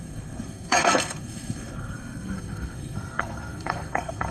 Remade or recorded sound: remade